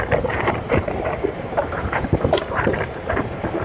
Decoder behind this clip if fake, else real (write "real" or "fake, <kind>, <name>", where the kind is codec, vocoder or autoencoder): fake, vocoder, BigVGAN v2